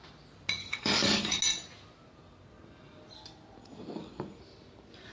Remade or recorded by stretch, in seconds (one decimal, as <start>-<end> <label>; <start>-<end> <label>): 0.0-0.6 recorded; 0.6-1.4 remade; 1.4-3.6 recorded; 3.6-4.4 remade; 4.4-5.1 recorded